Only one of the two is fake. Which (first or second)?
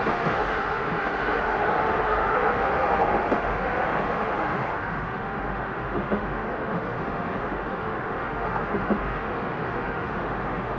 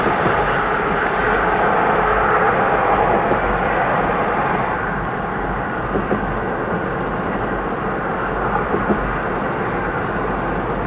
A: first